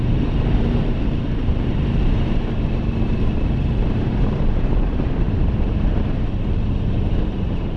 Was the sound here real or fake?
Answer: fake